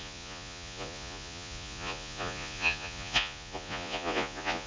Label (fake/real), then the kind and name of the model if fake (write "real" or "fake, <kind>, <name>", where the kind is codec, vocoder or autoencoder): fake, vocoder, Vocos